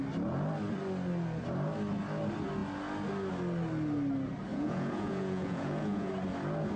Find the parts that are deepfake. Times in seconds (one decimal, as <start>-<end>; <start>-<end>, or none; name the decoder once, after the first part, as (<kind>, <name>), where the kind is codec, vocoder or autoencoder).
4.5-6.1 (vocoder, Vocos)